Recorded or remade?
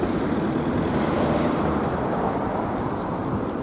remade